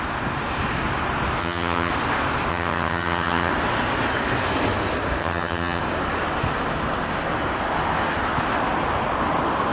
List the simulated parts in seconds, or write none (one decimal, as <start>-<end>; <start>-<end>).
1.4-1.9; 2.5-3.5; 5.2-5.8